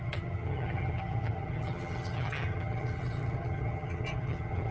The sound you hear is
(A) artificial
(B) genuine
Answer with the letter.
A